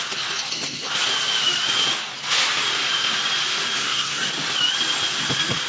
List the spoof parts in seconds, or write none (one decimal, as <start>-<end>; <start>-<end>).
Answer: 3.8-4.3